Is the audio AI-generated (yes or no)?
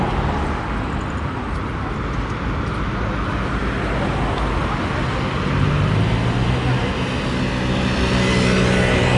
no